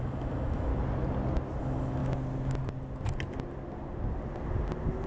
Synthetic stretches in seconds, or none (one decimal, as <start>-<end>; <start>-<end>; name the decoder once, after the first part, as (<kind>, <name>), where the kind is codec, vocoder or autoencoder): 0.0-0.7 (autoencoder, DAC-VAE); 1.6-2.0